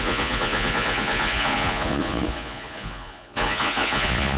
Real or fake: fake